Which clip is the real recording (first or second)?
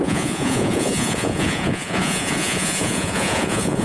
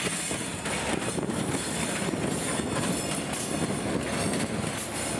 second